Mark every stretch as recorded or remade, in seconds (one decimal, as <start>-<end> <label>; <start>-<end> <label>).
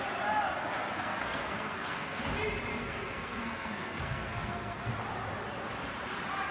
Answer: 0.0-0.6 recorded; 0.6-2.2 remade; 2.2-2.7 recorded; 2.7-4.9 remade; 4.9-6.5 recorded